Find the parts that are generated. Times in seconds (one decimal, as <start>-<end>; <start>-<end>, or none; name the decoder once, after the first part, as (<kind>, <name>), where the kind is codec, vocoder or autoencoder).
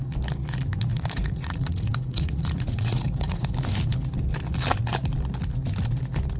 0.9-3.5 (vocoder, Vocos)